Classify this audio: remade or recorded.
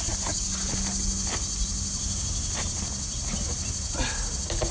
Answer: recorded